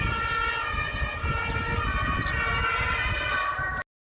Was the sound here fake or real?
real